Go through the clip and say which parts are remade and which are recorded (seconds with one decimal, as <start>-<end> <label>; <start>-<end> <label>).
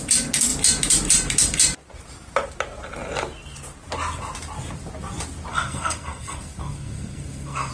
0.0-5.5 recorded; 5.5-7.7 remade